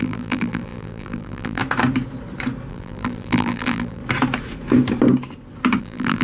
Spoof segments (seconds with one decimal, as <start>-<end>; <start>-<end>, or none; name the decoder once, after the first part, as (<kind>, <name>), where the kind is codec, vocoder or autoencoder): 0.0-1.6 (vocoder, BigVGAN v2); 2.7-4.0; 5.8-6.2